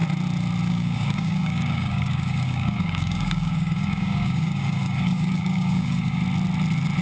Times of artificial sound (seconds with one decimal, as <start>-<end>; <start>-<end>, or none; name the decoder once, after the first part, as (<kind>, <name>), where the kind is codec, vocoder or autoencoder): 0.7-6.2 (codec, DAC)